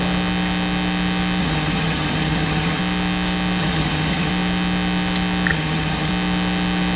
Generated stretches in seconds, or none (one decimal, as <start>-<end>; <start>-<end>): 1.4-2.8; 3.6-4.3; 5.5-6.1